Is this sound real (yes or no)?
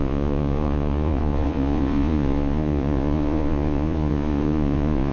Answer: no